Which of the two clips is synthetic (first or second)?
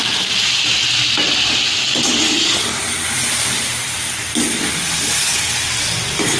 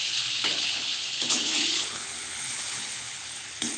second